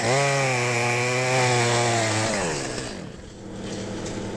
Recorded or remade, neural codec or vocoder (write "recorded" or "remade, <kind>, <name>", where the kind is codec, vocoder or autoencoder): recorded